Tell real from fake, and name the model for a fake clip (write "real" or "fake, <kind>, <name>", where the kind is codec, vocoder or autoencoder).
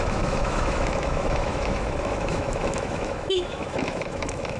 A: fake, autoencoder, DAC-VAE